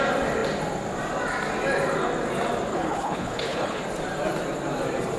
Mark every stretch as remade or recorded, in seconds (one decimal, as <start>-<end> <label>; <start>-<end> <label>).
0.0-2.7 recorded; 2.7-3.8 remade; 3.8-5.2 recorded